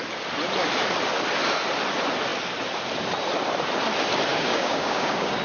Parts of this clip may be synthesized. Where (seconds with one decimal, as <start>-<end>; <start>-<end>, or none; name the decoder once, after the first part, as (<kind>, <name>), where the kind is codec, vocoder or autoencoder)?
4.3-5.4 (codec, DAC)